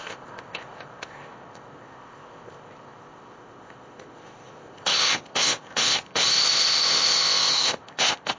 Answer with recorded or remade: remade